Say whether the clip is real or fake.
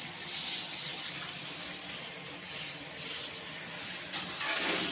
real